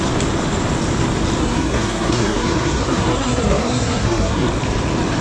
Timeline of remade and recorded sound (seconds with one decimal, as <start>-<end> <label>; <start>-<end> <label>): 0.0-1.4 recorded; 1.4-4.5 remade; 4.5-5.2 recorded